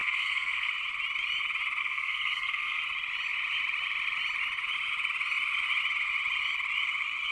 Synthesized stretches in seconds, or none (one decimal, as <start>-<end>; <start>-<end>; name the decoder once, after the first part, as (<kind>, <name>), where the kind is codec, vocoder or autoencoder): 0.0-0.7 (codec, SNAC); 1.8-2.8